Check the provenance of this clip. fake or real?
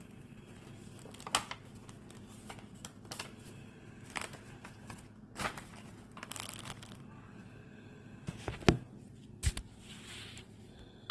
real